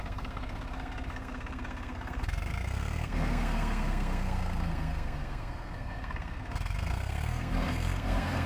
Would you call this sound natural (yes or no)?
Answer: no